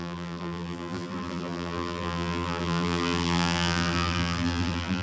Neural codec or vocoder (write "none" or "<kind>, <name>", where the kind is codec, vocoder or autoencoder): vocoder, BigVGAN v2